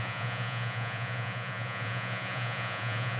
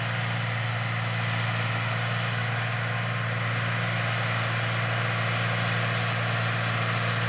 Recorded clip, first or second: second